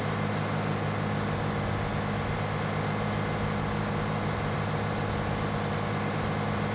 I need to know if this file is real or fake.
real